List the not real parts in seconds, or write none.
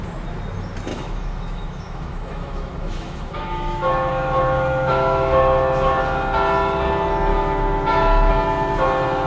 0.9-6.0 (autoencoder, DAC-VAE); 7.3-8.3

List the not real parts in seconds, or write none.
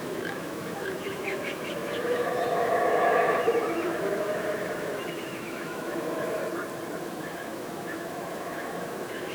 0.0-6.4 (autoencoder, DAC-VAE); 7.0-9.3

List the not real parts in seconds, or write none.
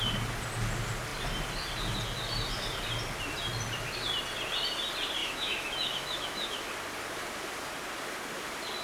5.2-6.7 (autoencoder, DAC-VAE)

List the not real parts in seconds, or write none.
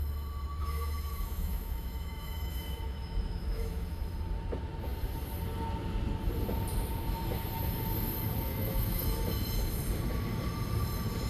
0.6-4.0 (autoencoder, DAC-VAE); 8.5-9.2